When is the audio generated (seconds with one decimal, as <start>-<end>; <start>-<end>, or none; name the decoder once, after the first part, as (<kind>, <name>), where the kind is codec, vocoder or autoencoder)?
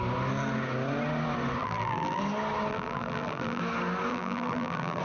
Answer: 1.6-2.2 (vocoder, BigVGAN v2); 2.7-3.6; 4.1-5.0